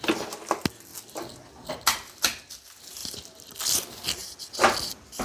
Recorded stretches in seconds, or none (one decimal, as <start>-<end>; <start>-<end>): 0.0-3.0; 3.6-4.2